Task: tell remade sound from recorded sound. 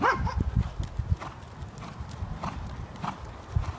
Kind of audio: recorded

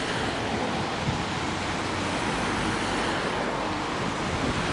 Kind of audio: recorded